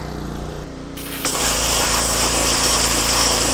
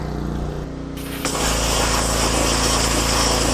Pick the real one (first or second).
second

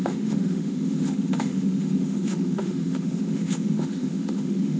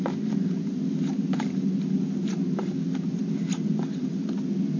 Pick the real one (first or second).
second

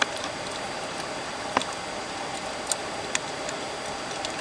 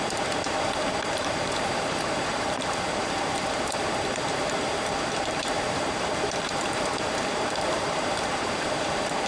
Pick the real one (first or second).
first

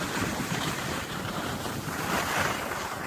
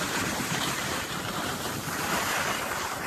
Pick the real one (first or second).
first